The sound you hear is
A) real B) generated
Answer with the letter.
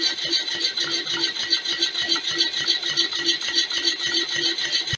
A